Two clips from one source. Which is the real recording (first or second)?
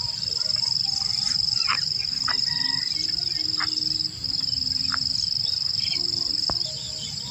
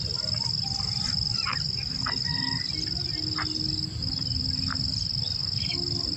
second